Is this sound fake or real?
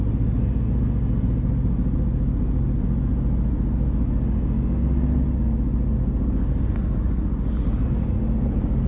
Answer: real